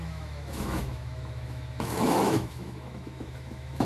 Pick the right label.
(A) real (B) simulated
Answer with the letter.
B